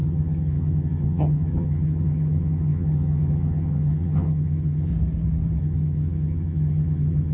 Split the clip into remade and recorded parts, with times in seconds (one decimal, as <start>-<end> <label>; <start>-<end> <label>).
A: 0.0-4.9 remade; 4.9-5.6 recorded; 5.6-7.3 remade